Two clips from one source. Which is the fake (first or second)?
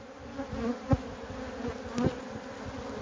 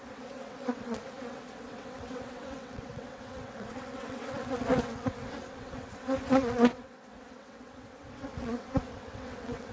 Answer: second